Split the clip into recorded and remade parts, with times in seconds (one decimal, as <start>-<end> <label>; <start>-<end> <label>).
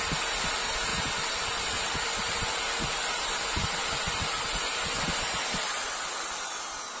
0.0-7.0 recorded